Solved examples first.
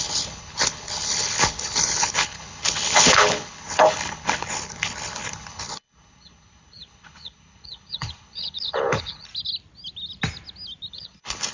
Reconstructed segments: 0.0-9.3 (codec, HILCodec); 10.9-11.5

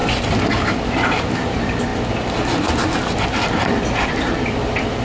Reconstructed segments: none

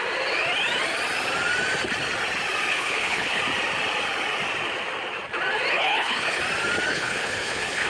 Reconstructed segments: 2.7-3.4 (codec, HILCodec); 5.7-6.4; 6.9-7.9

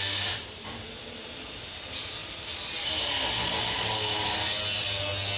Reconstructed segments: none

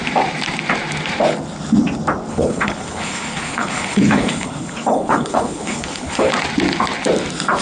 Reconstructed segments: 2.3-6.3 (codec, HILCodec)

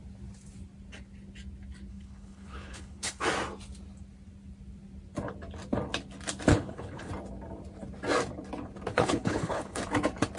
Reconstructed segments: 1.9-3.2 (codec, HILCodec); 6.5-7.1; 8.9-9.8

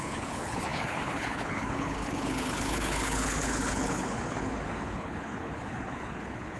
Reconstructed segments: 0.0-6.6 (codec, HILCodec)

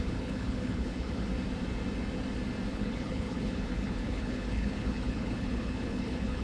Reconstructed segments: 0.0-1.3 (codec, HILCodec); 2.7-6.4